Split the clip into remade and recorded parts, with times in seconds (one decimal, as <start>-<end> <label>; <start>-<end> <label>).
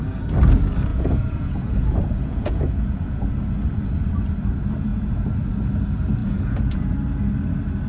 0.0-0.9 recorded; 0.9-3.4 remade; 3.4-4.9 recorded; 4.9-5.5 remade; 5.5-6.2 recorded; 6.2-6.9 remade; 6.9-7.9 recorded